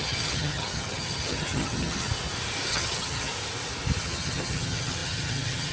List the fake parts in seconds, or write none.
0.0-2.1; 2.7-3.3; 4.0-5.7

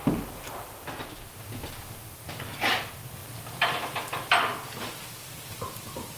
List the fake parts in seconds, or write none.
none

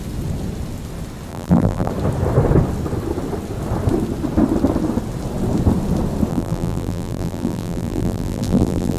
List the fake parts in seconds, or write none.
1.3-1.9; 6.3-9.0